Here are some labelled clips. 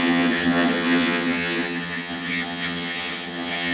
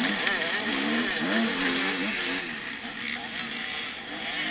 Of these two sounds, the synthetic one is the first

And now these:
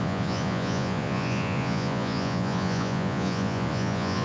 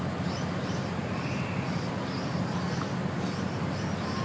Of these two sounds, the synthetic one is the first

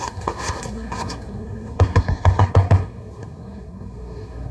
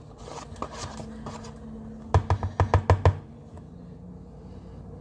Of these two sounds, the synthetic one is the first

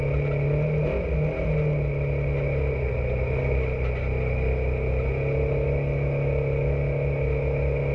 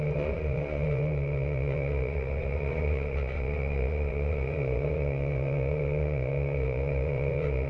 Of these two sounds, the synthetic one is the second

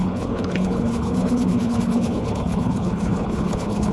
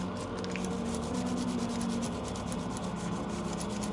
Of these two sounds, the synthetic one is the first